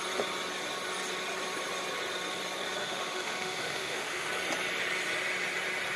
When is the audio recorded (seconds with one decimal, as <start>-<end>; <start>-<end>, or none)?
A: 0.0-2.8; 4.3-6.0